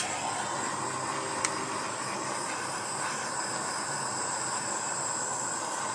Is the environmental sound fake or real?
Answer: fake